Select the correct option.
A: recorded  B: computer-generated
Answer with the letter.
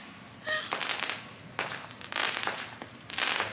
A